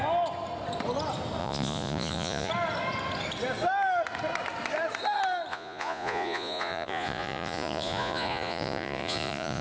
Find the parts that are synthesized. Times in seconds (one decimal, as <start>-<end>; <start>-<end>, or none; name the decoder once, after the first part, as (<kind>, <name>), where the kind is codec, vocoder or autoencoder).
1.4-2.5 (vocoder, Vocos); 5.5-9.6